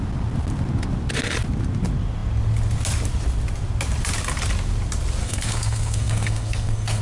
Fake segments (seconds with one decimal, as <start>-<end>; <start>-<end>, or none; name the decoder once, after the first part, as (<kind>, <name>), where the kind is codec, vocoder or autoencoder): 5.2-7.0 (codec, SNAC)